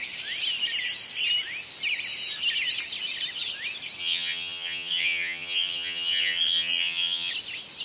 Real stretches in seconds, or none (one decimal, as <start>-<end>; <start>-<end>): 0.0-4.0; 7.3-7.8